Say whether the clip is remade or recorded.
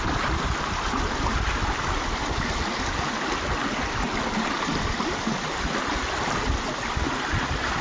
recorded